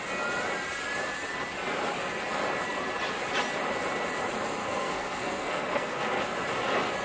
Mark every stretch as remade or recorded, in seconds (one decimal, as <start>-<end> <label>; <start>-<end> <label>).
0.0-4.6 recorded; 4.6-6.2 remade; 6.2-7.0 recorded